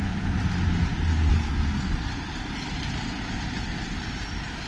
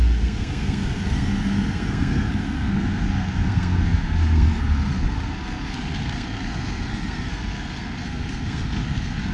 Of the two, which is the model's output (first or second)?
second